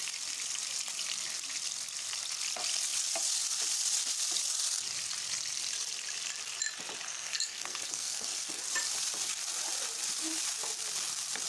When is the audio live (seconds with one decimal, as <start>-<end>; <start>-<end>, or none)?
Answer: 0.0-7.1; 8.6-11.5